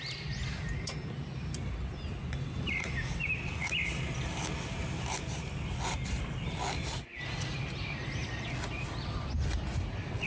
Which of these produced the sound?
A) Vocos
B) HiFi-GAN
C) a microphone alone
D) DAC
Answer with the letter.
C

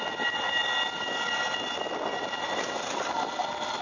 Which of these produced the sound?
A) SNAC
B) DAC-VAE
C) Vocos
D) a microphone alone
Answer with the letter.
D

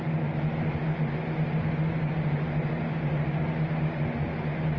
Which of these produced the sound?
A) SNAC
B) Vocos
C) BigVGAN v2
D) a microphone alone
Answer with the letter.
D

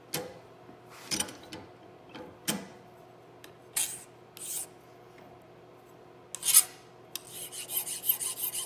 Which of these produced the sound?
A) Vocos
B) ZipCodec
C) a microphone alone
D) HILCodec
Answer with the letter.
C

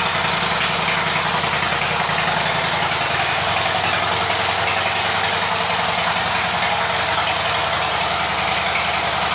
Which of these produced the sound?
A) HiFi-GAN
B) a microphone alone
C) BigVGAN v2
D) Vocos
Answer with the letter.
B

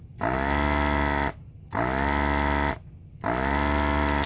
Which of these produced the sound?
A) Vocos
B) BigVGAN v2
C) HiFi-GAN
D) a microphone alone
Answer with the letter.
D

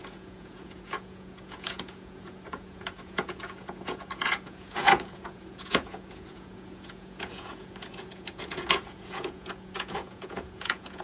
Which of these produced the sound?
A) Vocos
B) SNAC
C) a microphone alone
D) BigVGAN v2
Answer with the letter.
A